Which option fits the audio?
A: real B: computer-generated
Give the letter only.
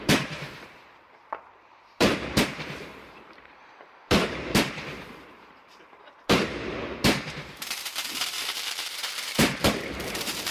B